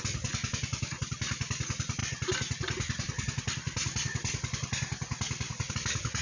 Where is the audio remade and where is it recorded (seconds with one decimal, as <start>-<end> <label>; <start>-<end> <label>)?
0.0-6.2 recorded